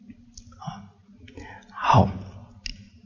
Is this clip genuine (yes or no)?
yes